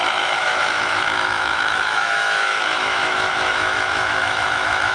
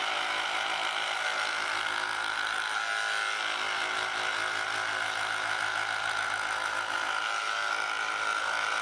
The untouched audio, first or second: second